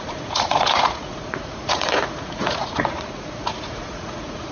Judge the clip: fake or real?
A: fake